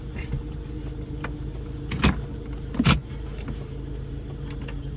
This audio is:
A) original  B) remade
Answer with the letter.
A